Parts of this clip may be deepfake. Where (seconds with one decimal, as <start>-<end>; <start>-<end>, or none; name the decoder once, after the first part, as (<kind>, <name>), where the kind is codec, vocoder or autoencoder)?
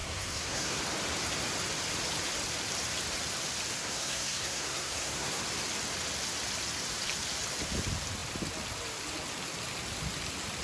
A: 0.0-0.8 (codec, SNAC); 3.8-5.4